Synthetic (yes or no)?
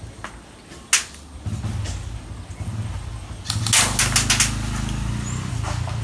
no